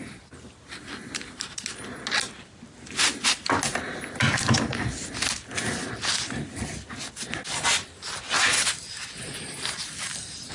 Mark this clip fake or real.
real